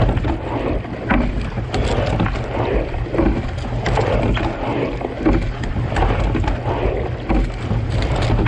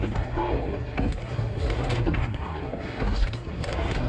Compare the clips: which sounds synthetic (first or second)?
second